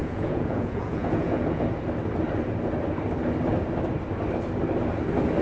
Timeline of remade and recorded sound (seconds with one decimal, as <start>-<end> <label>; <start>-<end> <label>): 0.0-1.6 remade; 1.6-5.4 recorded